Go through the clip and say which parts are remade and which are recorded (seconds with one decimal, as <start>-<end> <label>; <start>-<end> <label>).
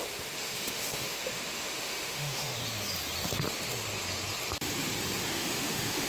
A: 0.0-2.5 remade; 2.5-5.3 recorded; 5.3-6.1 remade